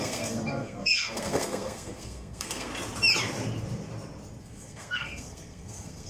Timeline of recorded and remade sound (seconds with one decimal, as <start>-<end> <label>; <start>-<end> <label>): 0.0-2.7 remade; 2.7-4.4 recorded; 4.4-6.1 remade